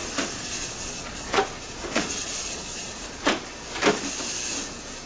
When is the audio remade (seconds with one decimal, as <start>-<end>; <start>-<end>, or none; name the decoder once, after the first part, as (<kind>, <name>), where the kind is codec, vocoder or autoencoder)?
0.0-1.4 (vocoder, Vocos); 1.8-3.3